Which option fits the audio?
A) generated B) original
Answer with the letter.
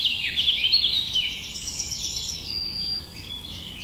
A